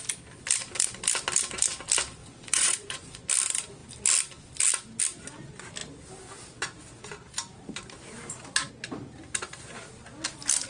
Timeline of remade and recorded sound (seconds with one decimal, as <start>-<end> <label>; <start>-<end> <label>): 0.0-2.2 recorded; 2.2-3.3 remade; 3.3-10.7 recorded